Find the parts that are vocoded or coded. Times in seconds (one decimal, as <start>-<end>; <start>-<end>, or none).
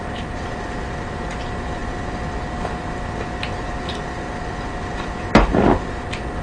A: none